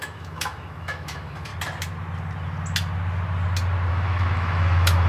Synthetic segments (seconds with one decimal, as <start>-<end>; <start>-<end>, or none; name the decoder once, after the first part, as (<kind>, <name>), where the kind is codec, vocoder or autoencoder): 0.0-1.5 (autoencoder, DAC-VAE); 3.9-5.1